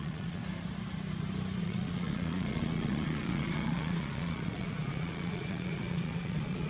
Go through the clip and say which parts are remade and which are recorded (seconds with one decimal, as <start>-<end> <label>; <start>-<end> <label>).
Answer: 0.0-0.4 remade; 0.4-1.6 recorded; 1.6-6.7 remade